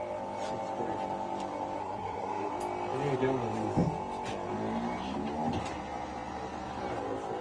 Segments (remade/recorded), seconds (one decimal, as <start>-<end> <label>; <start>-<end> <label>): 0.0-1.8 recorded; 1.8-2.5 remade; 2.5-7.4 recorded